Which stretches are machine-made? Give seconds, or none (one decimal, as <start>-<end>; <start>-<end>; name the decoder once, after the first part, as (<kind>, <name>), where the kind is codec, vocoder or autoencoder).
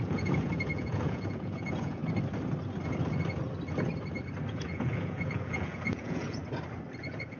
0.0-2.0 (vocoder, Vocos); 4.5-6.4; 7.0-7.4